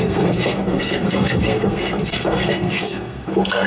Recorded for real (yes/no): no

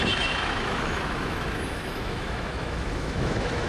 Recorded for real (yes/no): no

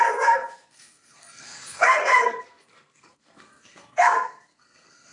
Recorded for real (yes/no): no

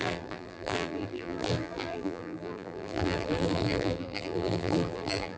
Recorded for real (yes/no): no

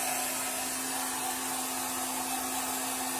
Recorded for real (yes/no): yes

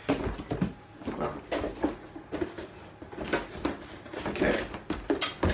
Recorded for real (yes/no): yes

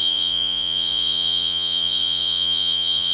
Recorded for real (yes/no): no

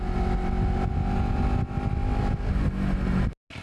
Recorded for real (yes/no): yes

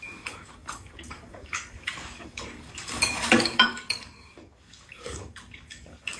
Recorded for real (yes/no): no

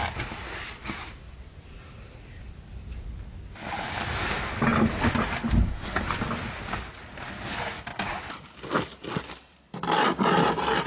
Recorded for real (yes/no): yes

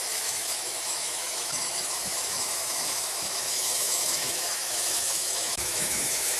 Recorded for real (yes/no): no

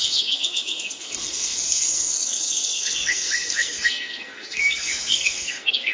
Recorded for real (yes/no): no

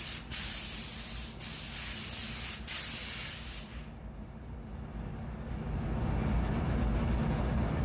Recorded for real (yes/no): yes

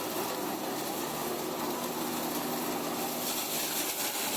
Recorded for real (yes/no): yes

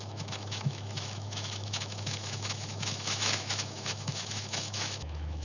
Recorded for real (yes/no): no